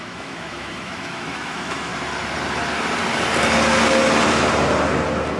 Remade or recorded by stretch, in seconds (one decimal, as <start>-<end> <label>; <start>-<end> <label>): 0.0-1.9 remade; 1.9-5.4 recorded